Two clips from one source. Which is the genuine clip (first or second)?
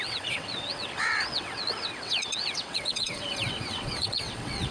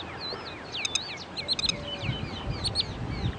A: second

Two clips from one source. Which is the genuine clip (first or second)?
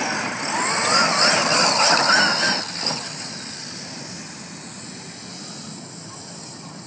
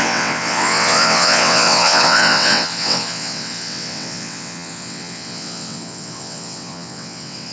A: first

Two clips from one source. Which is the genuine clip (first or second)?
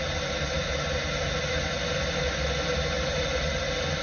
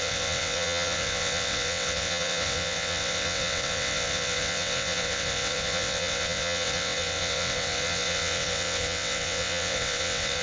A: first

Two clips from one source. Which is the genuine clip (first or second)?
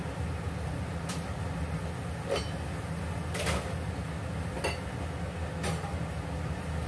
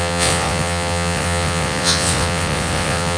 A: first